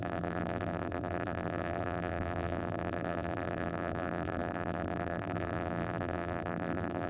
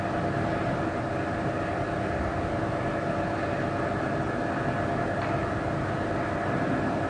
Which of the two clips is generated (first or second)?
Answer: first